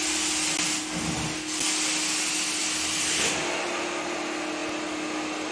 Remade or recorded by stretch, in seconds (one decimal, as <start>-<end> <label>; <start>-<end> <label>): 0.0-2.6 recorded; 2.6-3.4 remade; 3.4-5.5 recorded